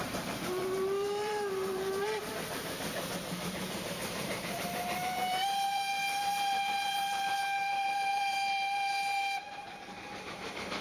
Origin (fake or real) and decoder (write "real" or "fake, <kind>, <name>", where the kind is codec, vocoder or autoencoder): fake, vocoder, BigVGAN v2